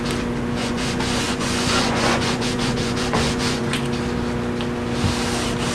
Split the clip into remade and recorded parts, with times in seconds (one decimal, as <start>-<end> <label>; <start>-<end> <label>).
0.0-0.6 recorded; 0.6-3.8 remade; 3.8-5.7 recorded